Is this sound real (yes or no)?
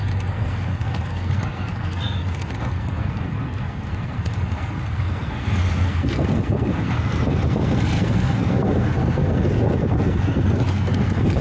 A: no